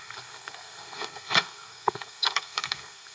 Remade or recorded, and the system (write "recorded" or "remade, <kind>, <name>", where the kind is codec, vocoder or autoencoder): remade, codec, SNAC